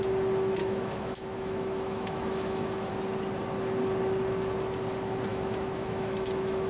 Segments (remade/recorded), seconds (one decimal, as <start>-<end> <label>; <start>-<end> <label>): 0.0-0.6 recorded; 0.6-2.9 remade; 2.9-5.3 recorded; 5.3-6.7 remade